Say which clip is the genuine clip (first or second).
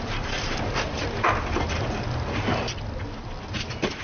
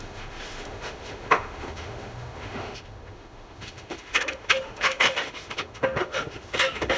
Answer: first